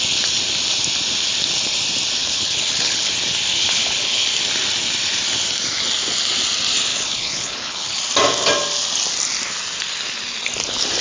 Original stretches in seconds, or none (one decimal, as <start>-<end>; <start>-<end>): 0.0-2.2; 3.1-3.5; 4.3-6.9; 8.0-11.0